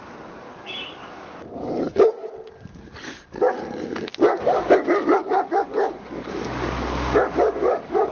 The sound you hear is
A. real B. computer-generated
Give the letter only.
B